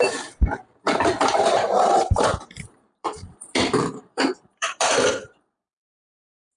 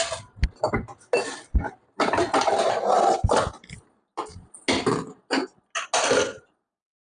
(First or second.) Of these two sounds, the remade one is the first